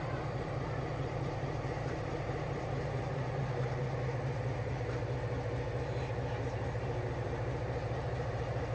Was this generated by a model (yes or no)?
yes